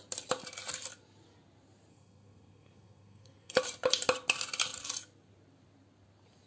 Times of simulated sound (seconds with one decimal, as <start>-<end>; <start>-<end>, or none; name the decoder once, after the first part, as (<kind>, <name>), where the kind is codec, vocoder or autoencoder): 1.9-3.6 (codec, SNAC)

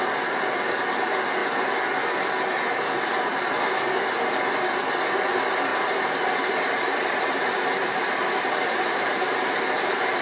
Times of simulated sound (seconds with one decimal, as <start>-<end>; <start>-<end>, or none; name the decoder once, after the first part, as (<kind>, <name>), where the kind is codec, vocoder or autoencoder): 5.7-9.6 (vocoder, BigVGAN v2)

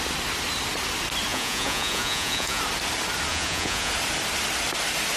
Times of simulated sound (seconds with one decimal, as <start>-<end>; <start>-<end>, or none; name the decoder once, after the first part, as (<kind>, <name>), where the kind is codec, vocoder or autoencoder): 1.3-2.6 (vocoder, Vocos); 3.3-3.9

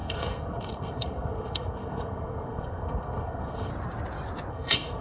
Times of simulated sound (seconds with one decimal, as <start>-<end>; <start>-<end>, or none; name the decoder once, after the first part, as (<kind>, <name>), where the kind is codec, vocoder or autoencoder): 0.0-3.7 (codec, SNAC); 4.5-5.0

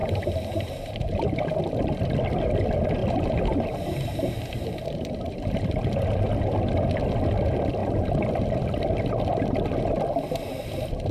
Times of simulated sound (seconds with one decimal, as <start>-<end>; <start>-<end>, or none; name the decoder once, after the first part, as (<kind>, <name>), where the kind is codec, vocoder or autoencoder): 0.0-1.6 (vocoder, BigVGAN v2); 3.0-6.3

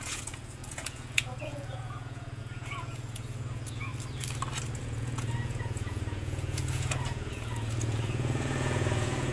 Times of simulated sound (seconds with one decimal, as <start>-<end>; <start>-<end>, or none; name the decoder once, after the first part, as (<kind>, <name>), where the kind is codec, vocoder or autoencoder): 0.0-3.9 (vocoder, Vocos); 4.8-9.3

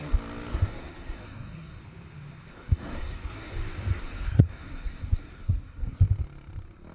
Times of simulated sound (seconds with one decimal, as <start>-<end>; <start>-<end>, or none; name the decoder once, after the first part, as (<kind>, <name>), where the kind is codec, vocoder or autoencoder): 0.5-1.8 (codec, SNAC); 2.5-3.5; 3.9-6.0

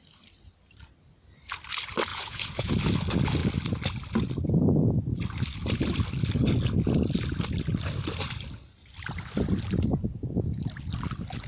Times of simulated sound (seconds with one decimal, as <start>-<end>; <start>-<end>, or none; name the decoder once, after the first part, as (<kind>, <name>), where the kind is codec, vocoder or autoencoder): 2.1-2.7 (vocoder, Vocos)